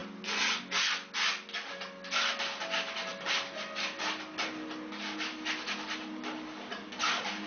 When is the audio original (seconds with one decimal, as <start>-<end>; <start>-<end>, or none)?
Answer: 0.0-7.5